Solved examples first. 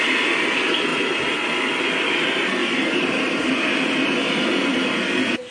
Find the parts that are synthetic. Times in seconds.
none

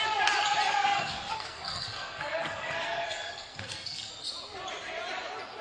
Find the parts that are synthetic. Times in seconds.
0.7-4.1 (codec, SNAC)

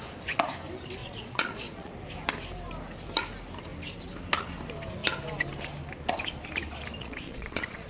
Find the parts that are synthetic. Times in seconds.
1.0-1.9 (vocoder, Vocos); 7.0-7.9

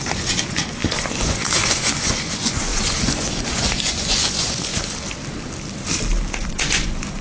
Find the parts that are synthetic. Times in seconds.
0.0-4.7 (vocoder, Vocos); 6.4-7.2

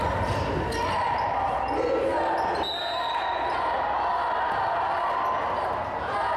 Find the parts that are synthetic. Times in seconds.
none